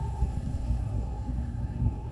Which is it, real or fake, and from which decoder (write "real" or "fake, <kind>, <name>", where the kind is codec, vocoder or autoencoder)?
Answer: fake, codec, SNAC